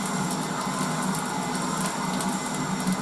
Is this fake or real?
real